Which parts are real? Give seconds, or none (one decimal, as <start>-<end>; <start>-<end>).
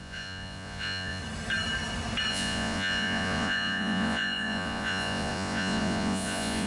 1.2-2.3